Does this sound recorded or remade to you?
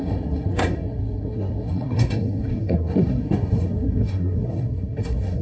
remade